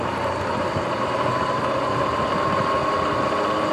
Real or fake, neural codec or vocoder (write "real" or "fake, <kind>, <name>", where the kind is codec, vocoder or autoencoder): real